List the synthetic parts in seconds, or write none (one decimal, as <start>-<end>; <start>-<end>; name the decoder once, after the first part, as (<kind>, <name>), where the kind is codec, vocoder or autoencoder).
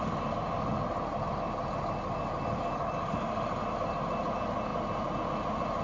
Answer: none